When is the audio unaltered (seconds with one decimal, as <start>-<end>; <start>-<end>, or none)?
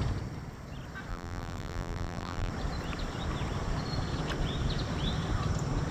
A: 0.0-1.1; 2.5-5.9